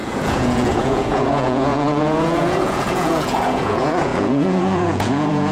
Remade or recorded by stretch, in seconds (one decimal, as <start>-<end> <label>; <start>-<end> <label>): 0.0-5.5 remade